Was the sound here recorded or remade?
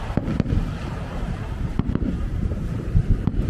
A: remade